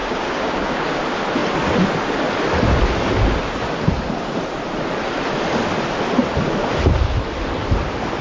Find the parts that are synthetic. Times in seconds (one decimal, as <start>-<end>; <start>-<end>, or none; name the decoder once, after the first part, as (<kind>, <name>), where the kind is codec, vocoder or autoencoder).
0.0-1.0 (codec, DAC)

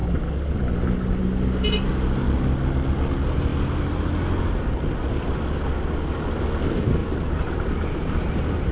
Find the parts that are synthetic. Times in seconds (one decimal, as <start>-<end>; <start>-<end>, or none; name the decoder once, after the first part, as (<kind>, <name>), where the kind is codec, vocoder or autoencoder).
none

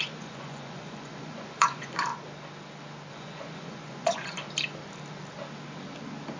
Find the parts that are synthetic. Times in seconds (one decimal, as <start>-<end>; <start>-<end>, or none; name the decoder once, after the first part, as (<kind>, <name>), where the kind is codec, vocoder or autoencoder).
0.0-2.1 (vocoder, Vocos); 3.1-4.4

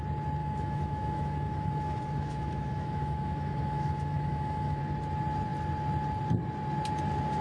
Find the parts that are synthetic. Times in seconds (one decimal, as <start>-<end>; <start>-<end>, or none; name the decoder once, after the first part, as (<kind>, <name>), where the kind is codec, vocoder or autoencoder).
0.4-4.8 (autoencoder, DAC-VAE)

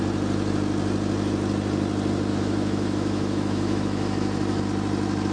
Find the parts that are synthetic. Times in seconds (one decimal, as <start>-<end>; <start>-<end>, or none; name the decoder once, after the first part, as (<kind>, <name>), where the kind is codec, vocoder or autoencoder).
2.3-4.6 (autoencoder, DAC-VAE)

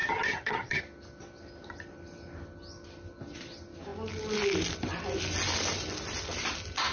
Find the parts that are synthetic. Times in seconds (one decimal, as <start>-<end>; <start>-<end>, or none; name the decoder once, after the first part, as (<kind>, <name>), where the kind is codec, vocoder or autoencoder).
0.0-0.8 (vocoder, HiFi-GAN)

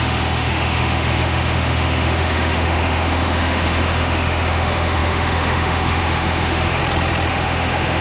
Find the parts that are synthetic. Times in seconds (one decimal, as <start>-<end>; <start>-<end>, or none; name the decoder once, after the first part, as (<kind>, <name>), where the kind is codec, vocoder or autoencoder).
0.0-6.8 (autoencoder, DAC-VAE); 7.3-8.0

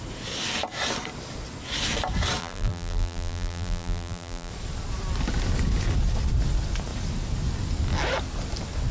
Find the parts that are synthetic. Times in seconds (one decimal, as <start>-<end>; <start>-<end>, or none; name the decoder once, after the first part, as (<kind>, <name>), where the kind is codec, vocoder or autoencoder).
2.4-4.5 (vocoder, BigVGAN v2)